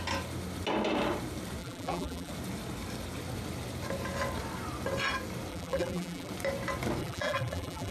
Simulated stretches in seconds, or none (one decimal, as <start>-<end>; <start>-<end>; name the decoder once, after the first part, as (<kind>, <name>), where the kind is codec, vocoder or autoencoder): 1.6-2.3 (vocoder, BigVGAN v2); 5.5-6.3; 7.0-7.9

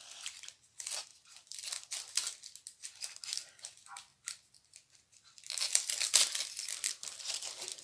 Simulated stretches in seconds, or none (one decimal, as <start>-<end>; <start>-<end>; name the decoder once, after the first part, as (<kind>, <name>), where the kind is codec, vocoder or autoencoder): 1.1-2.1 (vocoder, BigVGAN v2); 4.1-5.6

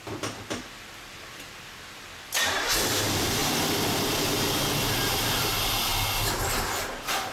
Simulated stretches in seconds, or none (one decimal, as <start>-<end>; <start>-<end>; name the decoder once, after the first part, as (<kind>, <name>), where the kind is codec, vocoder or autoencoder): 3.4-5.4 (vocoder, BigVGAN v2)

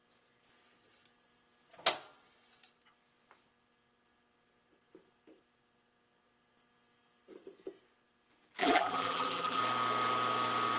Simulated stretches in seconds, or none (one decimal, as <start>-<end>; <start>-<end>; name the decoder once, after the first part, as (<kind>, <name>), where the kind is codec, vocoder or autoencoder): 8.6-9.6 (vocoder, BigVGAN v2)

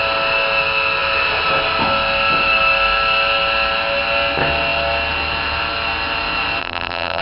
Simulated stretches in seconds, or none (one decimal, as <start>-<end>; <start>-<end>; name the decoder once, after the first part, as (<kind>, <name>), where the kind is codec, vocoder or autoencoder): 6.6-7.2 (vocoder, BigVGAN v2)

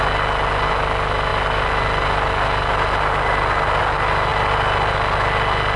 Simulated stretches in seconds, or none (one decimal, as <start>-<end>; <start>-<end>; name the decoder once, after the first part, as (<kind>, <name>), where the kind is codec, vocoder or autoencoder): none